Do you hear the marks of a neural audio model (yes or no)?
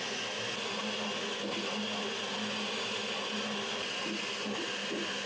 no